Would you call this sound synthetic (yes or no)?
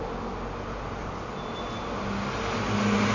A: no